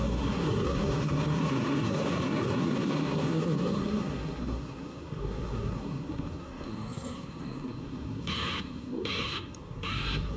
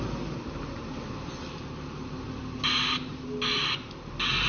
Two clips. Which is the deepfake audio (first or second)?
first